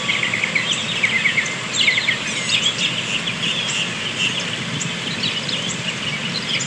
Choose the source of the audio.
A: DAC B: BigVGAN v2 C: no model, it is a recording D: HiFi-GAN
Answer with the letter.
C